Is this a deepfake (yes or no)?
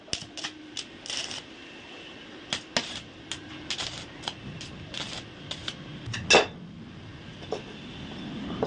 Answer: no